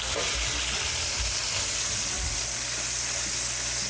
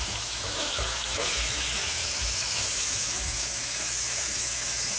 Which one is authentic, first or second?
first